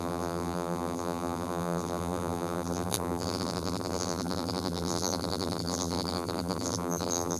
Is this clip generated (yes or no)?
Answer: yes